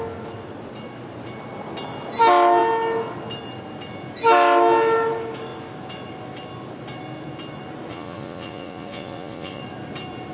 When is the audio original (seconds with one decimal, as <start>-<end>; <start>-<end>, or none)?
0.0-7.9; 9.6-10.3